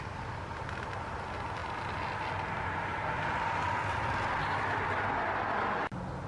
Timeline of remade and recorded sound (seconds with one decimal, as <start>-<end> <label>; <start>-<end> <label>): 0.0-6.3 recorded